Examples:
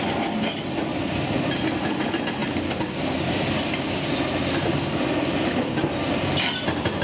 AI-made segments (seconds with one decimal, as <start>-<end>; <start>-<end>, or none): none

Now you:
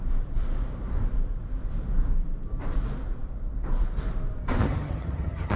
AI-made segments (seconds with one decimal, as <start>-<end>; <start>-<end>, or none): 4.6-5.6

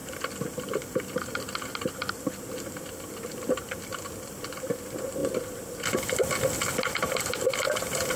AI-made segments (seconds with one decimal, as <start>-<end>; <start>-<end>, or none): none

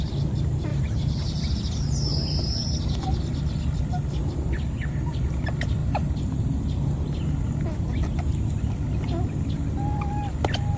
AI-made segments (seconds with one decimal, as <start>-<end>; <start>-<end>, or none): 0.7-1.5; 2.1-3.0; 5.8-7.2